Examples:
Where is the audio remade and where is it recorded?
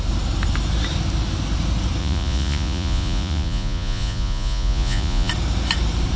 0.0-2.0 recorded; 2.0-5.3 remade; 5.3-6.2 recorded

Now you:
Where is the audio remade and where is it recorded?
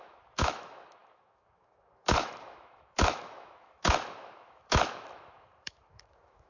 0.0-6.5 remade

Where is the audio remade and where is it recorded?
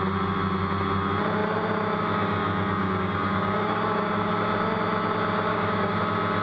0.0-2.4 recorded; 2.4-4.3 remade; 4.3-5.5 recorded; 5.5-6.0 remade; 6.0-6.4 recorded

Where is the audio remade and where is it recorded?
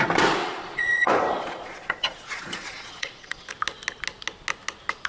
0.0-0.4 recorded; 0.4-3.5 remade; 3.5-5.1 recorded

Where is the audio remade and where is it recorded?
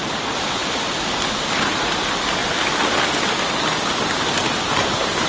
0.0-0.6 recorded; 0.6-1.1 remade; 1.1-5.3 recorded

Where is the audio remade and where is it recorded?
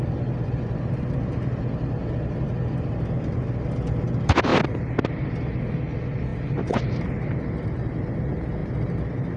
0.0-9.4 recorded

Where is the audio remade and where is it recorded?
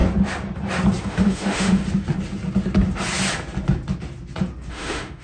0.0-1.0 recorded; 1.0-1.8 remade; 1.8-4.7 recorded; 4.7-5.2 remade